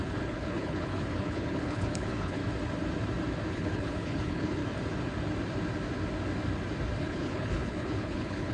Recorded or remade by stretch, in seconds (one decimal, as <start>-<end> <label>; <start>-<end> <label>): 0.0-2.4 remade; 2.4-3.5 recorded; 3.5-4.6 remade; 4.6-7.0 recorded; 7.0-8.5 remade